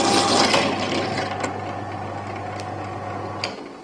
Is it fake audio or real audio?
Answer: real